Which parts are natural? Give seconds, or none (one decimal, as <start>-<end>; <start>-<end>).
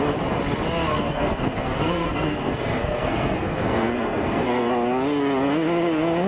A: 0.0-0.9; 4.7-6.3